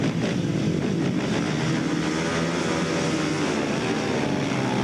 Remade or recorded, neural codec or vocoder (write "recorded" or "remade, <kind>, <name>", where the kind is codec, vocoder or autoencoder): recorded